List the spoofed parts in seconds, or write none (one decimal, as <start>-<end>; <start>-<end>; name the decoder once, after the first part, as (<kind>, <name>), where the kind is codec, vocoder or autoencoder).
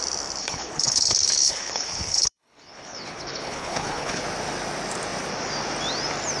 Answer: 0.4-4.2 (codec, HILCodec)